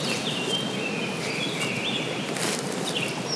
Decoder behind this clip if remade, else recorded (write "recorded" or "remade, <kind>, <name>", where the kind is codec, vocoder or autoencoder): recorded